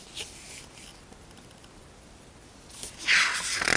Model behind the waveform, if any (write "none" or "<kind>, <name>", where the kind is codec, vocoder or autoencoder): none